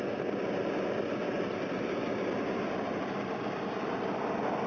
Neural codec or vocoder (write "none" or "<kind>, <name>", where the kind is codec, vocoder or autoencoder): none